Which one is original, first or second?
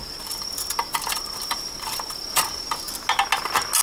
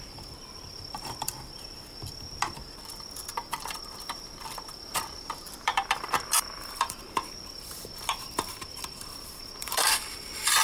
first